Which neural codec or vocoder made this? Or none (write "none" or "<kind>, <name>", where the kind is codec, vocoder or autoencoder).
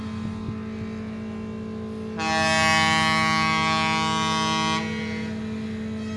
none